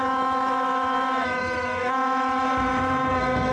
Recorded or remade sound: remade